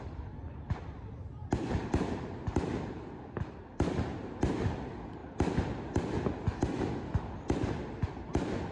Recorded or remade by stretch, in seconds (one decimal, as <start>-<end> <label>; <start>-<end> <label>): 0.0-8.7 recorded